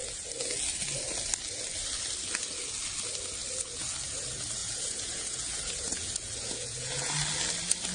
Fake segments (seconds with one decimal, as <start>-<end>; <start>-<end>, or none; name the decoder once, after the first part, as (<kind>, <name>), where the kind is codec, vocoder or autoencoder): 4.6-7.1 (vocoder, Vocos)